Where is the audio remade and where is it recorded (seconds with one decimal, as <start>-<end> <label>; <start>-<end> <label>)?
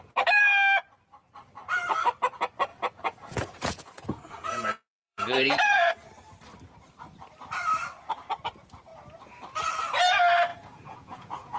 0.0-2.7 recorded; 2.7-5.9 remade; 5.9-10.5 recorded; 10.5-11.6 remade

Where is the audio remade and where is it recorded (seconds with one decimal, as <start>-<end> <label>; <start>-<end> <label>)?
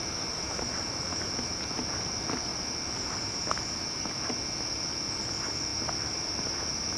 0.0-7.0 recorded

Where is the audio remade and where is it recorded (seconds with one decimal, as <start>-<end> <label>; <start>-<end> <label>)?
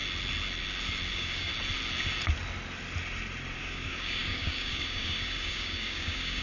0.0-1.1 recorded; 1.1-1.5 remade; 1.5-3.6 recorded; 3.6-6.4 remade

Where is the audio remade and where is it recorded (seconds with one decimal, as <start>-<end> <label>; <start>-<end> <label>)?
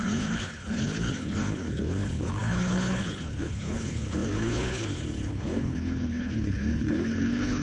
0.0-7.6 remade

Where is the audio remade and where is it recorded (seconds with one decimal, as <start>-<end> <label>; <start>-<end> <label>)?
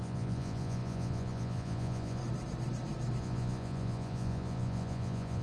0.0-2.2 remade; 2.2-3.2 recorded; 3.2-5.4 remade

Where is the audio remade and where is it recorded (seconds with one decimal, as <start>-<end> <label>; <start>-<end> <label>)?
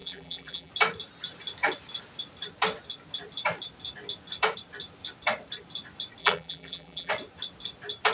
0.0-0.7 remade; 0.7-6.2 recorded; 6.2-7.1 remade; 7.1-8.1 recorded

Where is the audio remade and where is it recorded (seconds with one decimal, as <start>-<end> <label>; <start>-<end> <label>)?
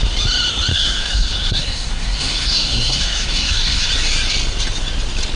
0.0-0.7 recorded; 0.7-3.9 remade; 3.9-5.4 recorded